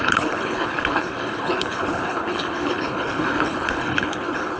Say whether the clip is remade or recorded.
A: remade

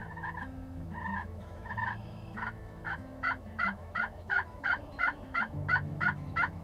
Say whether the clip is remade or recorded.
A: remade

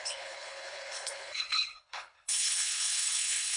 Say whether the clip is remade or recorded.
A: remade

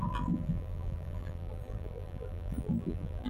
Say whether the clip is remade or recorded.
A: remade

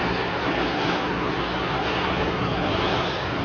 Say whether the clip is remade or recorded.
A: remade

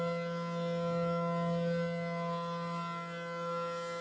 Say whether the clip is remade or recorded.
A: recorded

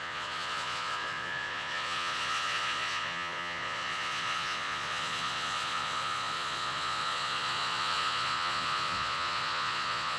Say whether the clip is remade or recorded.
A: remade